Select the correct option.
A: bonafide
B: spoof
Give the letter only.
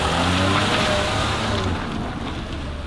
A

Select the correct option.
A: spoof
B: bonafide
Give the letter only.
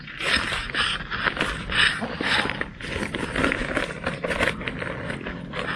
B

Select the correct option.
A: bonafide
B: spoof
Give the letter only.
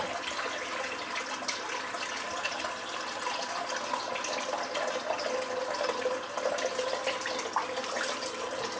A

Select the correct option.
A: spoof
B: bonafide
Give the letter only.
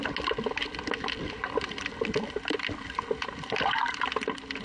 B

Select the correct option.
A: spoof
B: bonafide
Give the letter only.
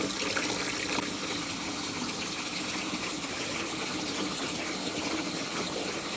B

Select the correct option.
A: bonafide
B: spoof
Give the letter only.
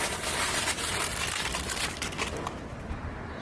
A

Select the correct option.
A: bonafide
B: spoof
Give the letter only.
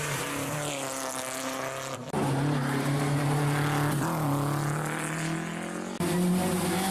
A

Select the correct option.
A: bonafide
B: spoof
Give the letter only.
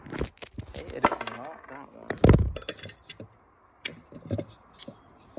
A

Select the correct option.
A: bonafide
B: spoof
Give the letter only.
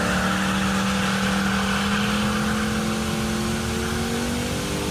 A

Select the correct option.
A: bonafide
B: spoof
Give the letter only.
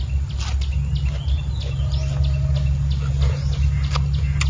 A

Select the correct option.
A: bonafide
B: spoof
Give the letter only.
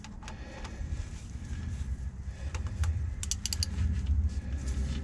A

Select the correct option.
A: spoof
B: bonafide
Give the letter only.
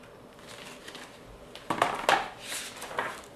B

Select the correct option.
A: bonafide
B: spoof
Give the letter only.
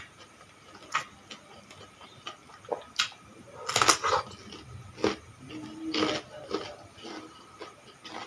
A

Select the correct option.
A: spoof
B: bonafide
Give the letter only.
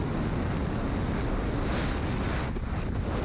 B